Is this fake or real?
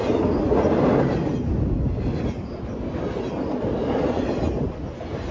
real